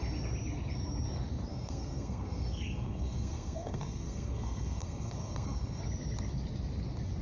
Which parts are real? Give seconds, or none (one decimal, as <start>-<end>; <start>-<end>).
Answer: 0.0-1.5; 5.8-7.2